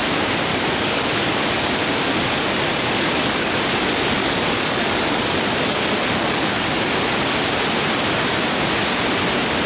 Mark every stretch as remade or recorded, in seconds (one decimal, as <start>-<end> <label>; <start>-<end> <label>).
0.0-0.5 recorded; 0.5-1.4 remade; 1.4-2.7 recorded; 2.7-3.5 remade; 3.5-4.2 recorded; 4.2-6.9 remade; 6.9-9.7 recorded

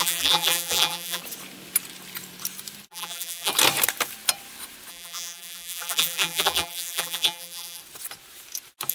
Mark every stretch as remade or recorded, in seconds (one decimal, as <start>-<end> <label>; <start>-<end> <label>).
0.0-1.2 remade; 1.2-2.9 recorded; 2.9-3.5 remade; 3.5-4.9 recorded; 4.9-7.8 remade; 7.8-8.9 recorded

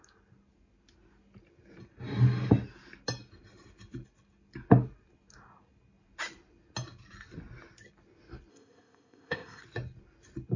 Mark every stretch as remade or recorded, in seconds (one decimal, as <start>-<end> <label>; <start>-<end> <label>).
0.0-8.5 recorded; 8.5-9.6 remade; 9.6-10.6 recorded

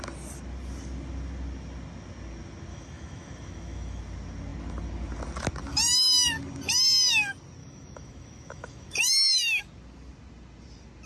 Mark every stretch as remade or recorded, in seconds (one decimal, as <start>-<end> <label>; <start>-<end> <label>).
0.0-2.7 recorded; 2.7-4.0 remade; 4.0-7.6 recorded; 7.6-9.6 remade; 9.6-11.1 recorded

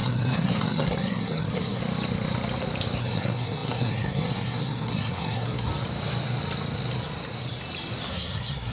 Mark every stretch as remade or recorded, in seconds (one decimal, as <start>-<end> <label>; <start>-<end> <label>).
0.0-1.8 remade; 1.8-3.0 recorded; 3.0-5.7 remade; 5.7-8.1 recorded; 8.1-8.7 remade